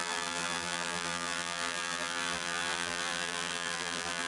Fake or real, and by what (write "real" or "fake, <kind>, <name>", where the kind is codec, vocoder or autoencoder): fake, vocoder, BigVGAN v2